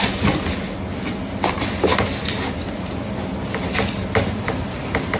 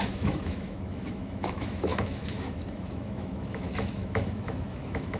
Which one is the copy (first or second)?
second